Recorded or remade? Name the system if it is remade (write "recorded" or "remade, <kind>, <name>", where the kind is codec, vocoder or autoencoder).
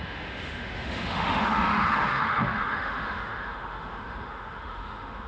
remade, autoencoder, DAC-VAE